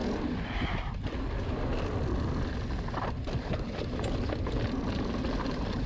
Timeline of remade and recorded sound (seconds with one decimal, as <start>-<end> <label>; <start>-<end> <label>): 0.0-5.9 recorded